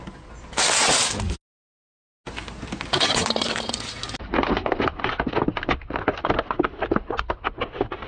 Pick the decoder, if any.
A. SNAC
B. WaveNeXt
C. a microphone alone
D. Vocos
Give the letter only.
C